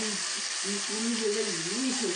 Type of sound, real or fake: real